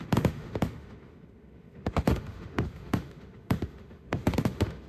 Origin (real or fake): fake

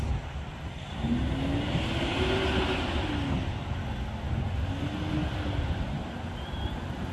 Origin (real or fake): real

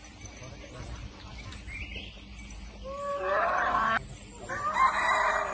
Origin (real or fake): real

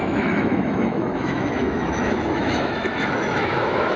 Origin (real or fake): fake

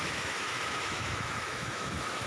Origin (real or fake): fake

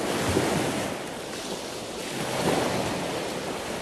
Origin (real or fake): real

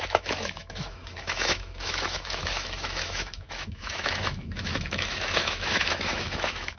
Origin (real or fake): fake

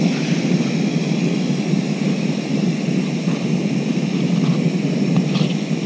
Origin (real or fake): real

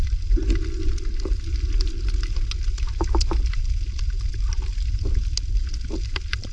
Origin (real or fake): real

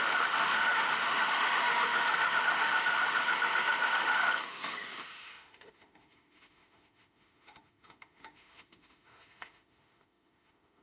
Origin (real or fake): fake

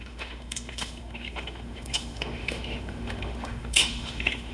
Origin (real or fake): fake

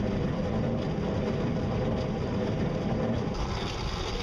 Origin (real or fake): real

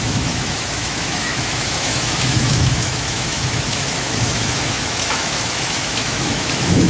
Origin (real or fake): fake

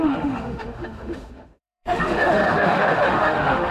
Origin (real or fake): fake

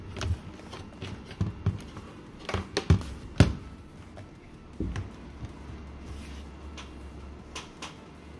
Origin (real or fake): real